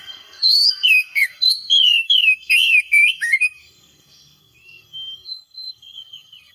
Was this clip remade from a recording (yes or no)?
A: yes